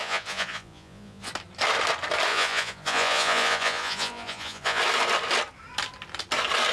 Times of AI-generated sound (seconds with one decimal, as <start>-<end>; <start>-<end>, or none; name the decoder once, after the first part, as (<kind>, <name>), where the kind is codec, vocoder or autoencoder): 0.0-1.3 (vocoder, Vocos); 2.3-4.8